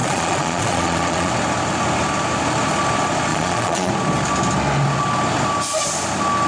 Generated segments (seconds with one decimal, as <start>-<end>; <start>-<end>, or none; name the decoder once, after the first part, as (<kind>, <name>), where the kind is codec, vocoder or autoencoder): 0.0-1.3 (vocoder, Vocos); 3.3-3.9